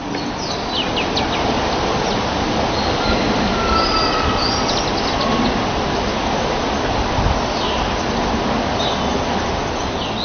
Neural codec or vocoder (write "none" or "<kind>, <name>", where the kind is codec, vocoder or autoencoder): none